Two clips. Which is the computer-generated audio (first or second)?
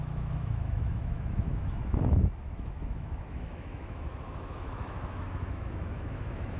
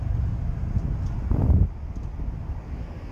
first